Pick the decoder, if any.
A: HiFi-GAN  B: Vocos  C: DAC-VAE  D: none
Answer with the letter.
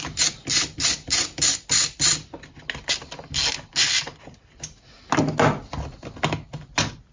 D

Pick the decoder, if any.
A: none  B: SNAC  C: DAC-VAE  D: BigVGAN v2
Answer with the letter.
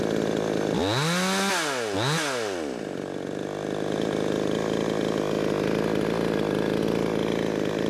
A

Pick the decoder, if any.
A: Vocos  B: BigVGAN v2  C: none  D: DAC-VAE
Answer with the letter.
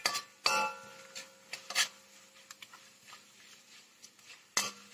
C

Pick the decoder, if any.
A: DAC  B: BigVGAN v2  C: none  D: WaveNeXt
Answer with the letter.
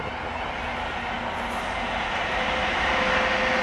C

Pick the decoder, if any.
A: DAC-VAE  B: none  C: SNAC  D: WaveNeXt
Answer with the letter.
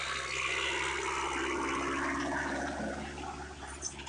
B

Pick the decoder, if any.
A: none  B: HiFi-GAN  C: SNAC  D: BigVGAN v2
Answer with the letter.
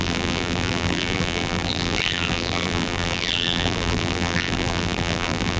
D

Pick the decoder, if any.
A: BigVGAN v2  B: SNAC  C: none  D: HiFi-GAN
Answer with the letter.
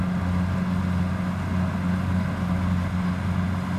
C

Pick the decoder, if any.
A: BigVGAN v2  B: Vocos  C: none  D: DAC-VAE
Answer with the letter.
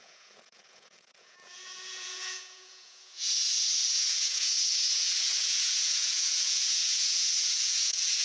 B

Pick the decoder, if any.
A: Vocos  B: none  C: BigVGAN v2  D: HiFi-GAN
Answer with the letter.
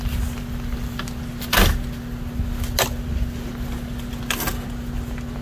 B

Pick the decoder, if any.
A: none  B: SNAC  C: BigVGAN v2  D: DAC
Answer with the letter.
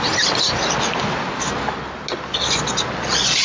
A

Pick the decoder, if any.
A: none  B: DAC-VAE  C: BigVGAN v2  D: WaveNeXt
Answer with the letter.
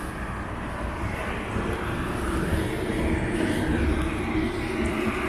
A